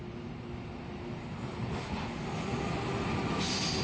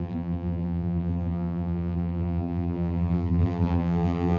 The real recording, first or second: first